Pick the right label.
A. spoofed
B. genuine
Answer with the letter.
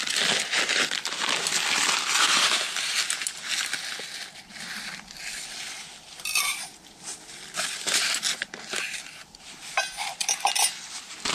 B